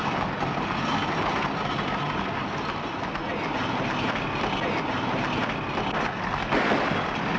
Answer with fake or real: real